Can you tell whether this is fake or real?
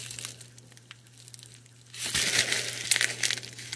real